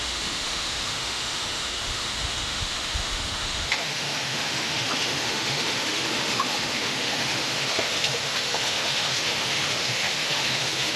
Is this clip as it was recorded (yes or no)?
no